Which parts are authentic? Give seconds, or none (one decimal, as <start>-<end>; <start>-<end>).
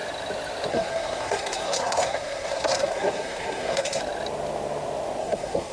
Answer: 0.0-0.7; 4.0-5.2